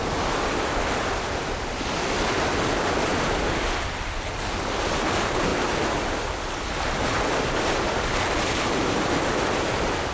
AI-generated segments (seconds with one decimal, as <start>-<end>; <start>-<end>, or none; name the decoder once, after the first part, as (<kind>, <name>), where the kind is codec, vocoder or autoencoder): none